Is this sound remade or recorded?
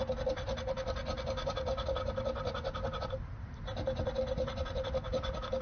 recorded